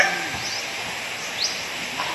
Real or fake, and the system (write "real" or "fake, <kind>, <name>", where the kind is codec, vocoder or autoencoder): real